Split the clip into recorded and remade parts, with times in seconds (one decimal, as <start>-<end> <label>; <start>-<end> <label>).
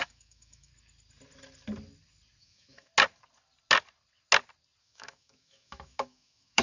0.0-0.7 remade; 0.7-2.4 recorded; 2.4-2.9 remade; 2.9-4.8 recorded; 4.8-6.6 remade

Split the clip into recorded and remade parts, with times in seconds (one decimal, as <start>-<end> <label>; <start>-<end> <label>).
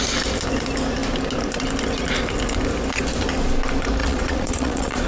0.0-4.0 recorded; 4.0-5.1 remade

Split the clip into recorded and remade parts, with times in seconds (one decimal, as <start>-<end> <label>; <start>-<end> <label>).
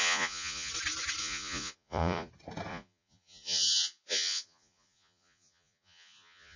0.0-0.7 remade; 0.7-1.2 recorded; 1.2-2.3 remade; 2.3-2.7 recorded; 2.7-6.6 remade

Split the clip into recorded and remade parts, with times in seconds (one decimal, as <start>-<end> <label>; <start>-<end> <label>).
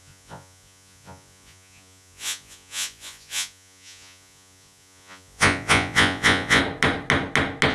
0.0-6.6 remade; 6.6-7.7 recorded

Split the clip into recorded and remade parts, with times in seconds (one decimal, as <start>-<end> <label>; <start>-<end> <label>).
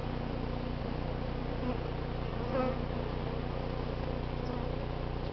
0.0-5.3 recorded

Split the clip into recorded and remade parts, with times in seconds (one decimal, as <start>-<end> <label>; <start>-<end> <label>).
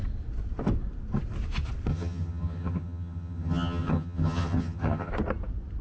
0.0-1.9 recorded; 1.9-5.1 remade; 5.1-5.8 recorded